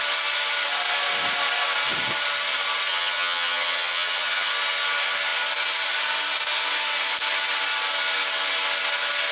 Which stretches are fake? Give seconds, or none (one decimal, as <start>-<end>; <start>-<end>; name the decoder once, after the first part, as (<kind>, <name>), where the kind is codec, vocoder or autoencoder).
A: 2.9-4.5 (vocoder, HiFi-GAN)